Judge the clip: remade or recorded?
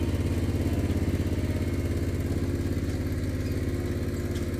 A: recorded